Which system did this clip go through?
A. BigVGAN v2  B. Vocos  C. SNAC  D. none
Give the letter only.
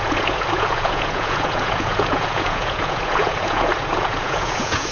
B